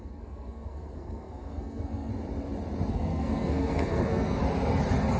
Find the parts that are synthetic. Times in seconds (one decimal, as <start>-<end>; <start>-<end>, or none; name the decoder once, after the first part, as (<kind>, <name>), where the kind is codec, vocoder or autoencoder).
0.0-2.1 (codec, SNAC); 2.9-4.4